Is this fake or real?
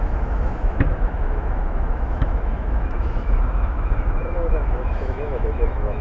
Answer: fake